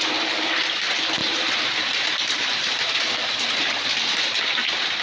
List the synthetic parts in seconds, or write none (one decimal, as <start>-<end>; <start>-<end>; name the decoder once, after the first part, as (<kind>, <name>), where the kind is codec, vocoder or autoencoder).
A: 1.2-3.7 (vocoder, BigVGAN v2)